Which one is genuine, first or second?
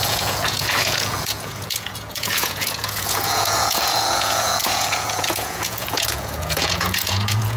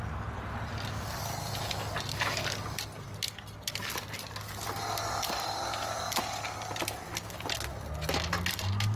second